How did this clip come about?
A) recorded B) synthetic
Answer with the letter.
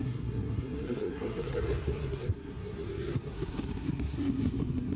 B